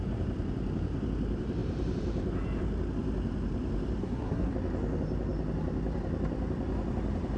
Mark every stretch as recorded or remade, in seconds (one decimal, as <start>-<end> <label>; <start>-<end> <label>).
0.0-4.0 recorded; 4.0-4.5 remade; 4.5-7.4 recorded